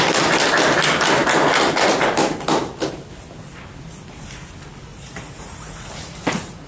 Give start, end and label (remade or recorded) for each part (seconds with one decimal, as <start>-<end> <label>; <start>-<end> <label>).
0.0-4.9 recorded; 4.9-6.7 remade